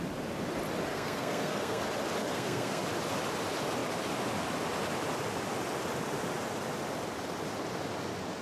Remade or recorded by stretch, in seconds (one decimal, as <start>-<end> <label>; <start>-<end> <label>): 0.0-0.9 recorded; 0.9-1.8 remade; 1.8-2.3 recorded; 2.3-2.8 remade; 2.8-8.4 recorded